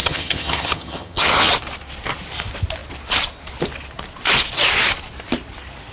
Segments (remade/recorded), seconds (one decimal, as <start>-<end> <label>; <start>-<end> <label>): 0.0-1.5 remade; 1.5-5.9 recorded